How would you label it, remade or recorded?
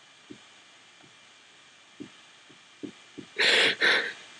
recorded